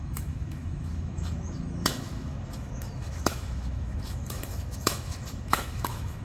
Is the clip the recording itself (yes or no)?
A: no